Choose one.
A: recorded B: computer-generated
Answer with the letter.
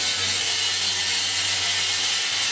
A